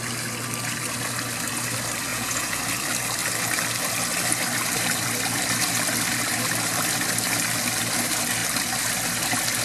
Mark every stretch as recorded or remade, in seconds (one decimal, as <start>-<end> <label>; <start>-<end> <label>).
0.0-2.1 recorded; 2.1-2.6 remade; 2.6-9.6 recorded